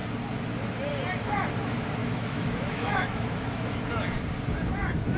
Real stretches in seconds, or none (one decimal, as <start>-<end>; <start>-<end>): 0.0-2.0; 3.8-5.2

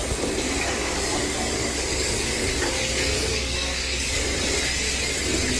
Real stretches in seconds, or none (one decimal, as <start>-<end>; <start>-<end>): 0.0-0.8; 4.2-5.6

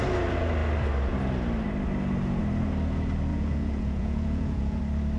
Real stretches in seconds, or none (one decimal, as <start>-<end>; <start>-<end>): 0.0-3.3; 4.8-5.2

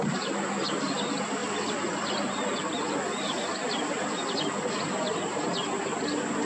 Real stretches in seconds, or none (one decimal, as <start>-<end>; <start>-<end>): 0.0-1.4; 2.9-6.5